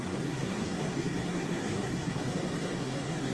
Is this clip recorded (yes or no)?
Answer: no